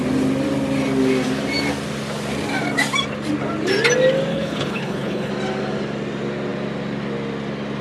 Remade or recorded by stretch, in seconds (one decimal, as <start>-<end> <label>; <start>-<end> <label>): 0.0-4.3 recorded; 4.3-5.3 remade; 5.3-7.8 recorded

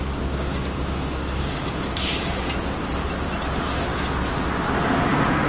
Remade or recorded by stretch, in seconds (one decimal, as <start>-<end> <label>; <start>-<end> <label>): 0.0-1.6 remade; 1.6-5.5 recorded

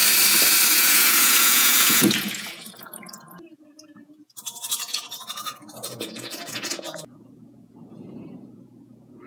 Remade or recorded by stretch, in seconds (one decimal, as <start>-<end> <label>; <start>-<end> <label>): 0.0-0.7 recorded; 0.7-9.3 remade

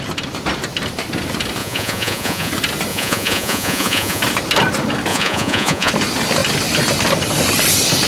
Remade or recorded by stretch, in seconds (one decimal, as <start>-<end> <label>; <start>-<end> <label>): 0.0-1.6 recorded; 1.6-2.5 remade; 2.5-2.9 recorded; 2.9-4.2 remade; 4.2-5.1 recorded; 5.1-5.9 remade; 5.9-8.1 recorded

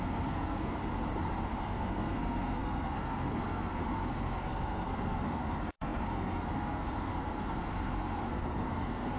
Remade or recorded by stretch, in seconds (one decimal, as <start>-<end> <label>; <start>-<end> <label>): 0.0-0.8 remade; 0.8-1.6 recorded; 1.6-9.2 remade